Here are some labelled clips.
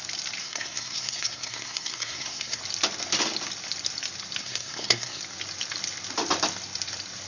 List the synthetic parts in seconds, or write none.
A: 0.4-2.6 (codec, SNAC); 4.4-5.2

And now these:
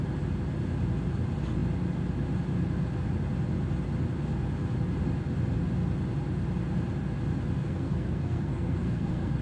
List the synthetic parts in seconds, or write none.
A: 7.6-9.4 (codec, SNAC)

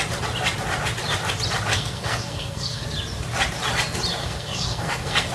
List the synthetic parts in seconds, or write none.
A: 1.7-2.8 (codec, SNAC); 4.2-5.3

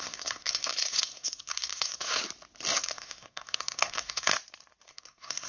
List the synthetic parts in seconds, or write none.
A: 0.0-2.2 (codec, SNAC); 2.8-4.3; 4.9-5.5